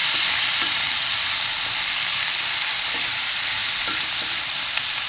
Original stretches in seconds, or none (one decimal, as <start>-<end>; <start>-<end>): none